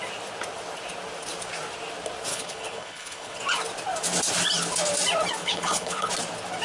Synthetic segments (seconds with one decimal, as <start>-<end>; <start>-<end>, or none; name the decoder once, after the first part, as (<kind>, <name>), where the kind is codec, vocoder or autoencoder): 2.3-3.4 (codec, HILCodec); 5.4-6.1